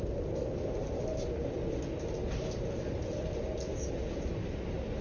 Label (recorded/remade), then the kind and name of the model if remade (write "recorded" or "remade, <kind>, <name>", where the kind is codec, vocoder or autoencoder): recorded